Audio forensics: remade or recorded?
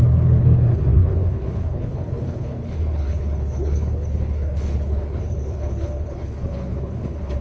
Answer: remade